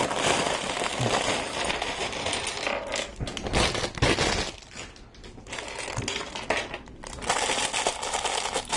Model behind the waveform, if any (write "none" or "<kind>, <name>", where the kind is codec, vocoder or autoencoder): none